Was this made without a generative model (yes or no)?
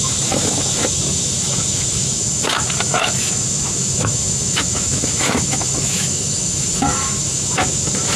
no